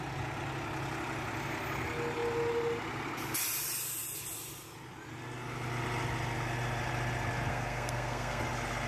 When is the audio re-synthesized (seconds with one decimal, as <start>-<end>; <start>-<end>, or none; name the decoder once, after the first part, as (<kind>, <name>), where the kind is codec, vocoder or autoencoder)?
7.5-8.4 (codec, SNAC)